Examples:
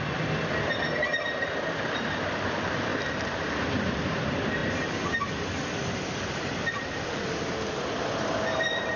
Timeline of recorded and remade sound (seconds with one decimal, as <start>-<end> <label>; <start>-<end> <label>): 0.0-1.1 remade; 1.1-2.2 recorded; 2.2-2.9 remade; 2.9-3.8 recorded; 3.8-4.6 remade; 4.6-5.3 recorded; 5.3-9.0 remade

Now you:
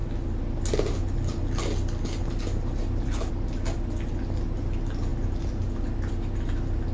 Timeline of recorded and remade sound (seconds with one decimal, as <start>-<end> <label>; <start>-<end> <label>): 0.0-6.9 recorded

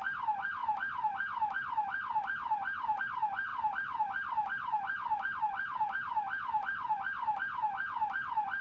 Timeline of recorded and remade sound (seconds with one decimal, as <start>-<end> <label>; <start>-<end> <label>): 0.0-8.6 recorded

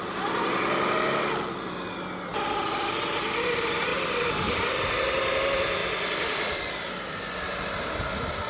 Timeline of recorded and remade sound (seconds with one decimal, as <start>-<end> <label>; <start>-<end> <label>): 0.0-2.3 recorded; 2.3-3.2 remade; 3.2-3.9 recorded; 3.9-4.8 remade; 4.8-5.8 recorded; 5.8-6.9 remade; 6.9-8.5 recorded

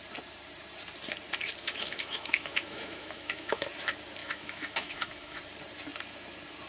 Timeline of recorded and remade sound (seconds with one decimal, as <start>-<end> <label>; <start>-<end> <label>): 0.0-1.6 recorded; 1.6-3.7 remade; 3.7-4.2 recorded; 4.2-5.4 remade; 5.4-6.7 recorded